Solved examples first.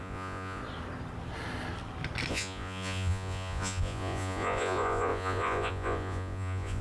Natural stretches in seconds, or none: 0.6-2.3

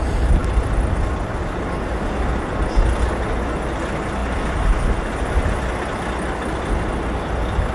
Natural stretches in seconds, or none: 0.0-7.7

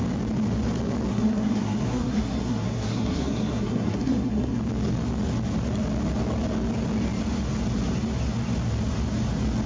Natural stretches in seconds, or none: 0.0-1.1; 4.6-9.7